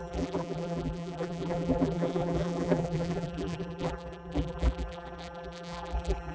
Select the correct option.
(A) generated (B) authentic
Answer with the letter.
A